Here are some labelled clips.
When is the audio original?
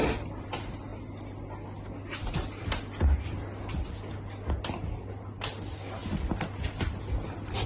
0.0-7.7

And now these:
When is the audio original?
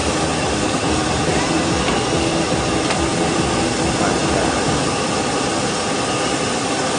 0.0-3.1; 3.7-7.0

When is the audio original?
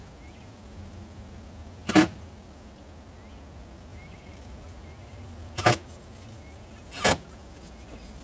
0.0-3.9; 5.7-8.2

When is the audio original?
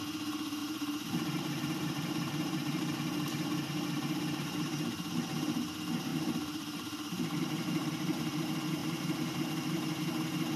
0.0-0.6; 2.8-6.1; 8.4-8.8; 9.4-10.6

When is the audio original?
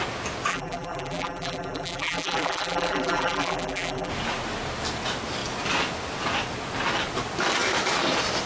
0.0-0.5; 4.1-8.5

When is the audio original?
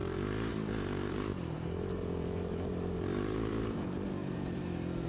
none